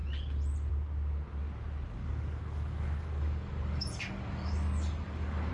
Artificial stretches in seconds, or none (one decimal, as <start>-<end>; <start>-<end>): 1.9-5.5